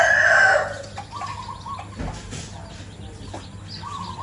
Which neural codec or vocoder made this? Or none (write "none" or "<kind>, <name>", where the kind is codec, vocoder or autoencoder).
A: none